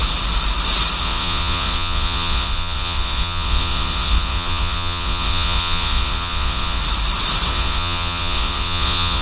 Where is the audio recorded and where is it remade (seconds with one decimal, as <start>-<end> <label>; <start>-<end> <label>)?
0.0-1.0 recorded; 1.0-6.8 remade; 6.8-7.5 recorded; 7.5-9.2 remade